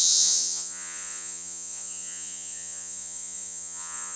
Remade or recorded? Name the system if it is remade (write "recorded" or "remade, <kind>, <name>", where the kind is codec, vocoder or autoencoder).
remade, vocoder, Vocos